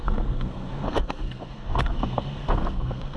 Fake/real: fake